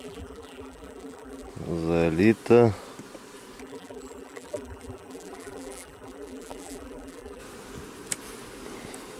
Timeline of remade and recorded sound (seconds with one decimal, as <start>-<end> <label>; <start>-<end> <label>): 0.0-1.5 remade; 1.5-3.6 recorded; 3.6-7.4 remade; 7.4-9.2 recorded

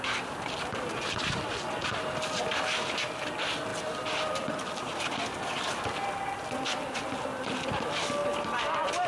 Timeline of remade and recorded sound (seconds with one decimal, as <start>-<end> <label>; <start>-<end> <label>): 0.0-8.2 recorded; 8.2-9.1 remade

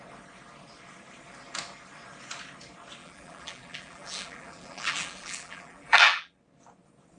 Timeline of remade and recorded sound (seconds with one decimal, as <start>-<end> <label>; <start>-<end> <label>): 0.0-3.0 recorded; 3.0-6.4 remade; 6.4-7.2 recorded

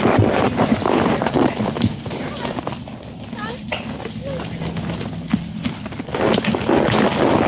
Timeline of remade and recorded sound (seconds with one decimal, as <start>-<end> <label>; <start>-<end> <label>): 0.0-0.8 recorded; 0.8-1.9 remade; 1.9-7.5 recorded

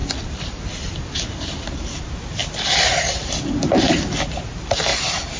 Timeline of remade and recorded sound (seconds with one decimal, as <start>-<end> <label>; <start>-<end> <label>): 0.0-2.0 remade; 2.0-2.4 recorded; 2.4-3.7 remade; 3.7-5.4 recorded

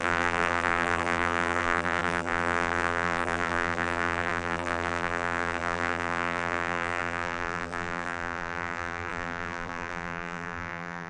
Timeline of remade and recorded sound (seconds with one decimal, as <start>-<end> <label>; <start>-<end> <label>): 0.0-11.1 remade

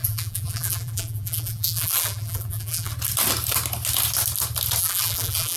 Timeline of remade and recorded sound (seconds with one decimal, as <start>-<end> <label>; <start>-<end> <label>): 0.0-2.9 remade; 2.9-4.8 recorded; 4.8-5.6 remade

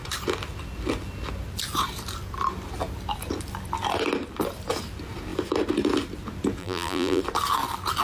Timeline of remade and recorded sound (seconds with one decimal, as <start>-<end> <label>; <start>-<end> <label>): 0.0-6.6 recorded; 6.6-7.2 remade; 7.2-8.0 recorded